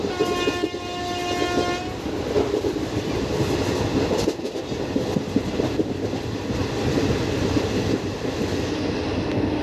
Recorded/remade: recorded